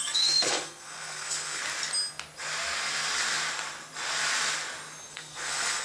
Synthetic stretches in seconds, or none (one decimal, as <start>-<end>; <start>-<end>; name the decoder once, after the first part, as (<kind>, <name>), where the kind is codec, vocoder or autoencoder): 0.0-1.6 (codec, SNAC); 5.1-5.8